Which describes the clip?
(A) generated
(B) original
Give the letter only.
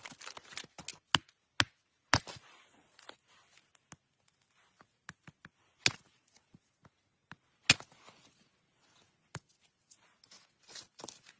B